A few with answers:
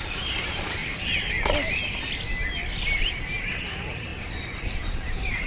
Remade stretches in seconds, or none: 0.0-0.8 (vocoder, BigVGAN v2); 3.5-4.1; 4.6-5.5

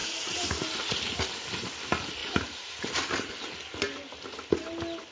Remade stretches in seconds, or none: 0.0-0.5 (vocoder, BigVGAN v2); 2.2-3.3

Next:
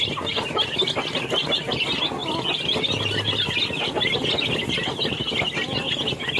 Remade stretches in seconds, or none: none

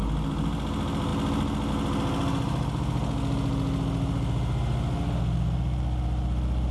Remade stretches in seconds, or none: none

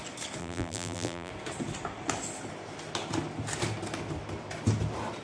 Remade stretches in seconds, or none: 0.4-1.3 (vocoder, BigVGAN v2)